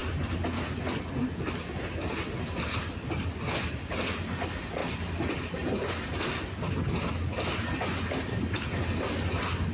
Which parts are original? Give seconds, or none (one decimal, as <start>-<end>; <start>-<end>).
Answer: 0.0-9.7